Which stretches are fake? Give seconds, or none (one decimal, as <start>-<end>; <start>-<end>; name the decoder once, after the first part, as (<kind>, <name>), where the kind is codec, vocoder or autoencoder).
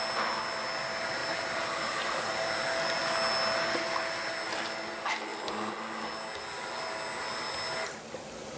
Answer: none